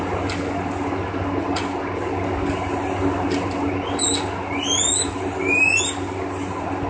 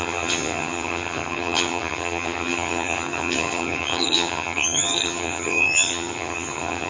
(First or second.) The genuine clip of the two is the first